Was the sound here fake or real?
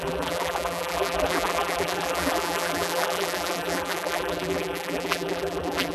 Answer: fake